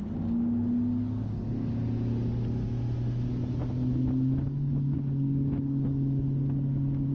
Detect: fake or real real